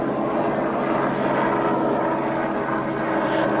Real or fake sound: real